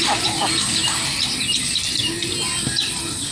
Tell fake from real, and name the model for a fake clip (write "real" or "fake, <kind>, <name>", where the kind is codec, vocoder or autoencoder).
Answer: real